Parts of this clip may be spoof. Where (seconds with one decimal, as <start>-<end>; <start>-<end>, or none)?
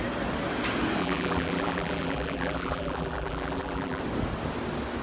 1.0-4.0